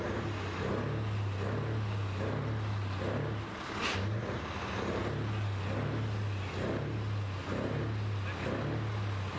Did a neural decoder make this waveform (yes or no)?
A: no